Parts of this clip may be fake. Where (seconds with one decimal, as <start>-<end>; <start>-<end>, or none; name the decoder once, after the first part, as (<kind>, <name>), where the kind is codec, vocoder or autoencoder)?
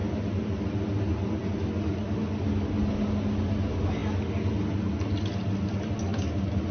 none